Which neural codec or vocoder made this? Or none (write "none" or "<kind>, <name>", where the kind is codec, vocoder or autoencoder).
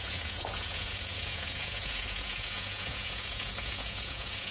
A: vocoder, Vocos